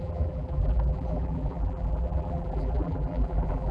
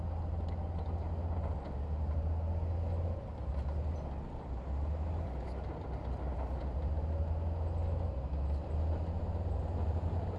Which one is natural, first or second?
second